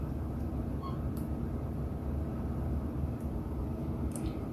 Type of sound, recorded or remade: recorded